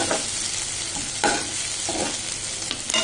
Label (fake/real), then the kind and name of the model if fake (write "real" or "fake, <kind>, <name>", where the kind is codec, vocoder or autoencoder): real